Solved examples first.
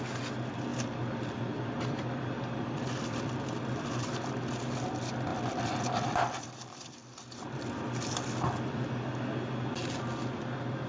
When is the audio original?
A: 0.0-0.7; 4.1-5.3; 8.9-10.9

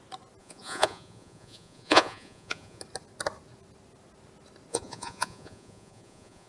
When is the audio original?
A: 0.0-0.4; 2.8-4.7

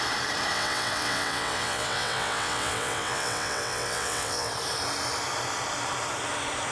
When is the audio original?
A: 0.0-0.5; 4.5-6.7

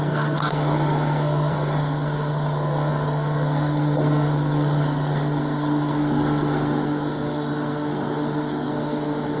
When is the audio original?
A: none

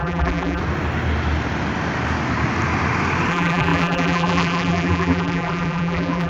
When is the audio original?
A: 0.6-3.3

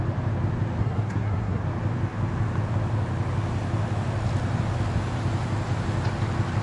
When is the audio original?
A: 0.0-0.8; 1.6-6.6

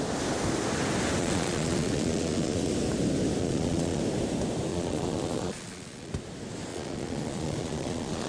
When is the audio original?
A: 0.0-1.2; 2.7-3.4; 4.0-4.7; 6.1-6.7

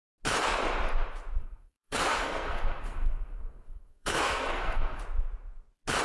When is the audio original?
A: 0.0-1.4; 5.0-6.0